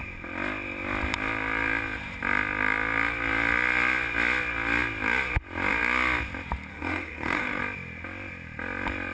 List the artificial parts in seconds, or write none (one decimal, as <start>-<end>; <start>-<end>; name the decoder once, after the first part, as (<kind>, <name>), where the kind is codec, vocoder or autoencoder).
6.7-7.6 (autoencoder, DAC-VAE)